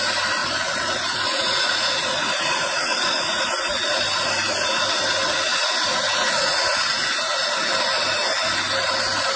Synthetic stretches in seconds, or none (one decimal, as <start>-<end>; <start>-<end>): 0.4-3.4; 5.5-6.9